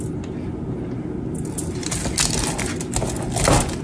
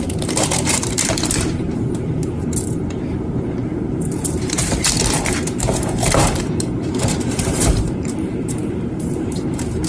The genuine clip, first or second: first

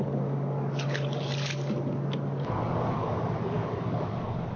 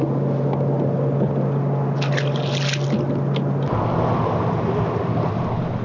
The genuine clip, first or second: second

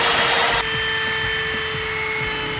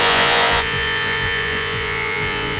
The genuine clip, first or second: first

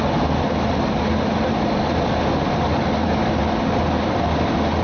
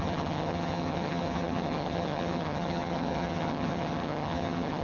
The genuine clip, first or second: first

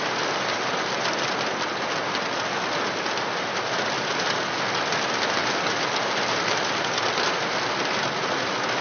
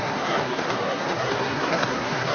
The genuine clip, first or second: first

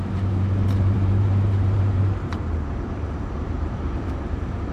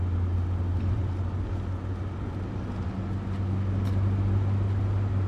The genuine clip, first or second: second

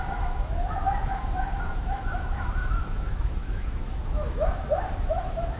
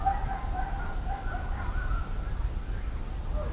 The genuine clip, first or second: second